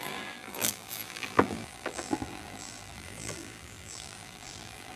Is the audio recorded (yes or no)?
no